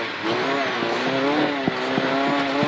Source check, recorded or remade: recorded